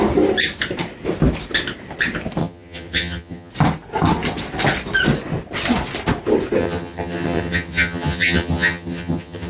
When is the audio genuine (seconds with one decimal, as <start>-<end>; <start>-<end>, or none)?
0.0-2.4; 3.5-6.6